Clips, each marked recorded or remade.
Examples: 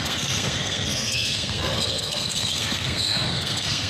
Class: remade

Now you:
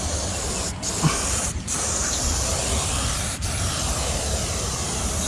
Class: recorded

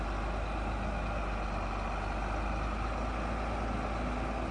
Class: recorded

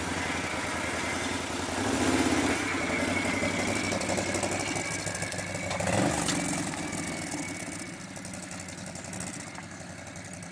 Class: recorded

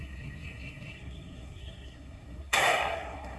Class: remade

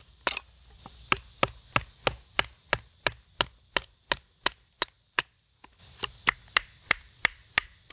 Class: recorded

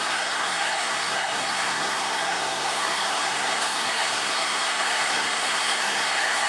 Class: remade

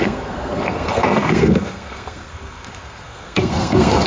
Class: remade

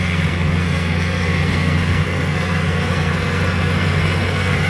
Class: remade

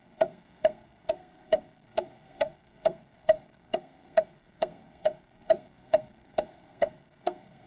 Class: remade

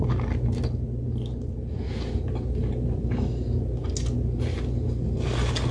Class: recorded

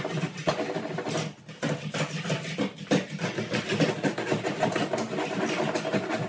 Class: recorded